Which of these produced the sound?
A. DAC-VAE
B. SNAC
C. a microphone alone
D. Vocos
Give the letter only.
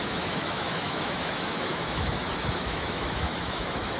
A